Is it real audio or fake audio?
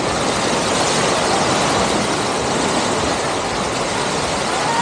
real